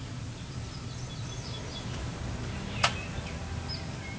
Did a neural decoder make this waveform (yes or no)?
no